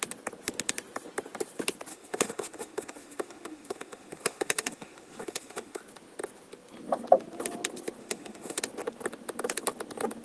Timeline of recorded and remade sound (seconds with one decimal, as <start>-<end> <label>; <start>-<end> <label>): 0.0-1.9 recorded; 1.9-5.8 remade; 5.8-8.0 recorded; 8.0-8.6 remade; 8.6-10.2 recorded